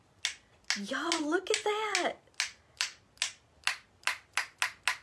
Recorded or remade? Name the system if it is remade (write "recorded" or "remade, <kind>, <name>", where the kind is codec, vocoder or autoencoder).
recorded